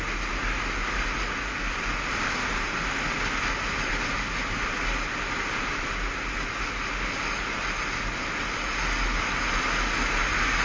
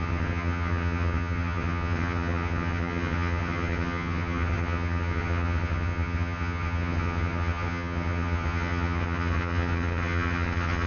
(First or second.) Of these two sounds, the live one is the first